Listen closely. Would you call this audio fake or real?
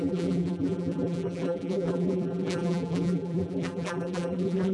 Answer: fake